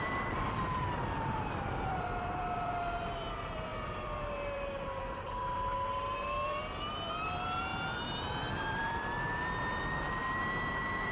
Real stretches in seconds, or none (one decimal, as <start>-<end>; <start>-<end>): 10.2-10.7

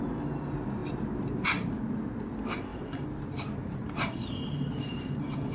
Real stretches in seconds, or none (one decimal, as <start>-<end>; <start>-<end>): 0.0-2.7; 5.1-5.5

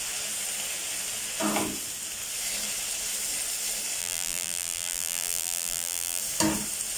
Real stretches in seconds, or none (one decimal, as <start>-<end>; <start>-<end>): 0.0-4.0; 6.2-7.0

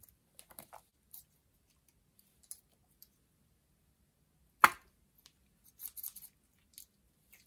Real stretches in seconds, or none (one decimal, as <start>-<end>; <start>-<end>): 0.0-7.5

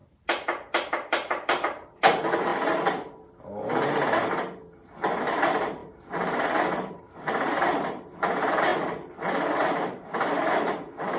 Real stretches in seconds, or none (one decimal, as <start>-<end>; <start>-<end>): 0.0-0.9; 2.5-5.2

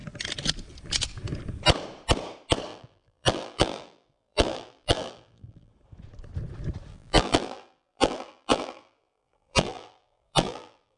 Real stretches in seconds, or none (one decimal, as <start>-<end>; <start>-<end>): 0.0-2.7; 5.7-6.9

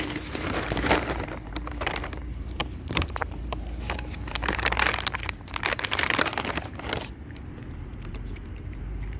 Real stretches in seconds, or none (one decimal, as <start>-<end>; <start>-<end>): 6.3-7.9

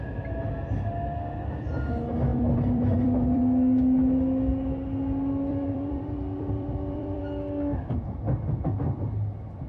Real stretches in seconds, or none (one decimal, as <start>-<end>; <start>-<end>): 0.0-2.3; 3.4-5.5; 7.2-9.7